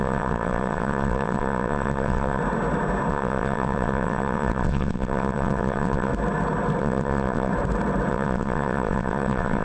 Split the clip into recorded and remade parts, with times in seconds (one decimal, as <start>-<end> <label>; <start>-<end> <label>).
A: 0.0-2.4 remade; 2.4-3.1 recorded; 3.1-6.1 remade; 6.1-6.8 recorded; 6.8-7.5 remade; 7.5-8.1 recorded; 8.1-9.6 remade

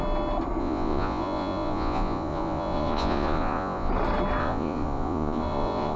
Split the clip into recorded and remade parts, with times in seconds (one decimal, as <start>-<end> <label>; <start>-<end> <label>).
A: 0.0-0.6 recorded; 0.6-3.9 remade; 3.9-4.4 recorded; 4.4-6.0 remade

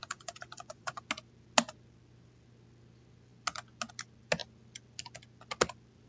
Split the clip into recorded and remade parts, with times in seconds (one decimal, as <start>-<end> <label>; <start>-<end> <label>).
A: 0.0-1.0 remade; 1.0-6.1 recorded

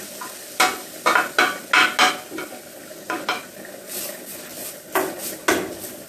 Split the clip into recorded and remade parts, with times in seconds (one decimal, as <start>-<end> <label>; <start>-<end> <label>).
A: 0.0-6.1 recorded

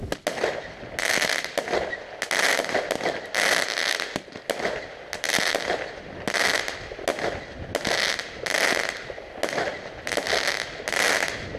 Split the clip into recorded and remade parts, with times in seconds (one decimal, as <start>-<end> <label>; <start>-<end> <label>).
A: 0.0-11.6 recorded

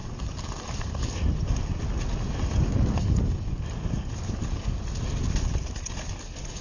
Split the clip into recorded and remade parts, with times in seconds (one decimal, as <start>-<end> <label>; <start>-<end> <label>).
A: 0.0-0.9 remade; 0.9-6.6 recorded

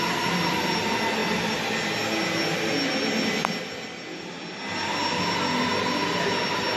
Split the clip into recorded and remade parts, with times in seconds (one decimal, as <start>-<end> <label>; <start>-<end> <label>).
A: 0.0-6.8 recorded